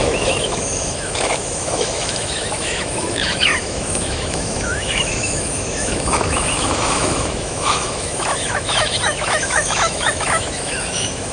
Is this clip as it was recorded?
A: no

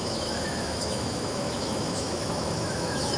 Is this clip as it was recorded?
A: no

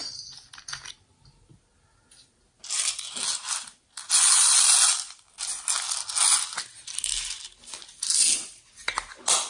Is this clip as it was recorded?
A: yes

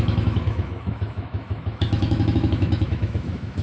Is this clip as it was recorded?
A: no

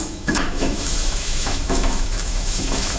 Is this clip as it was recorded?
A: no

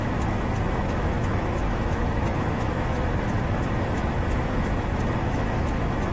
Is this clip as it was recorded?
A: no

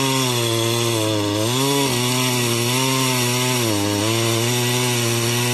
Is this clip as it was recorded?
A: yes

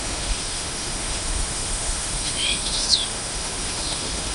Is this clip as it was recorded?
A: no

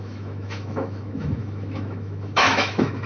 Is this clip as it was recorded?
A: no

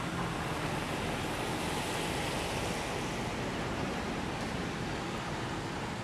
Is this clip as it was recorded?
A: yes